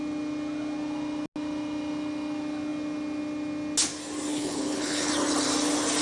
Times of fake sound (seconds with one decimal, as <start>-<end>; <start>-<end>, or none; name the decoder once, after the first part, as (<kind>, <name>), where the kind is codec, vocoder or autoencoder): 4.3-5.1 (codec, HILCodec)